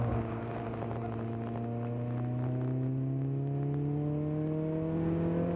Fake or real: real